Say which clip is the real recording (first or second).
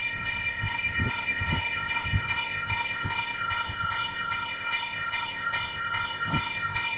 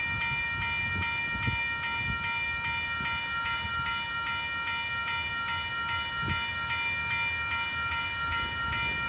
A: second